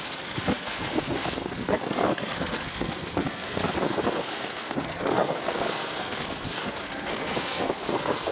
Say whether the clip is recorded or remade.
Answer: remade